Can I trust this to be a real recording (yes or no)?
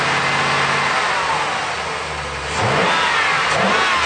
yes